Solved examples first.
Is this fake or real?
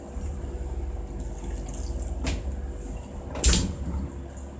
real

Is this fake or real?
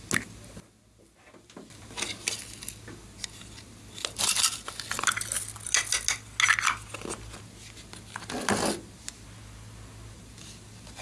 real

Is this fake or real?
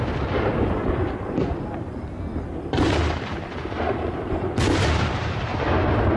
real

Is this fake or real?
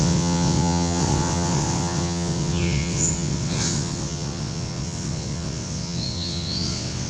fake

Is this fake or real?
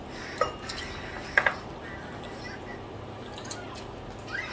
real